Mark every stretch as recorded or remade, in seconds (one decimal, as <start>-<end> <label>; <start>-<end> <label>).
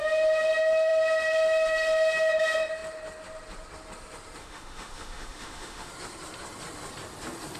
0.0-4.4 recorded; 4.4-5.9 remade; 5.9-7.6 recorded